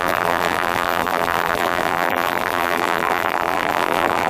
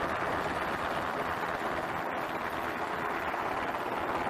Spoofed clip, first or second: first